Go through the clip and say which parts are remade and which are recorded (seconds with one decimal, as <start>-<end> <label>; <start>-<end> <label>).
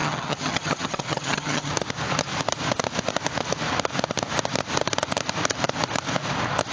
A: 0.0-1.7 remade; 1.7-6.7 recorded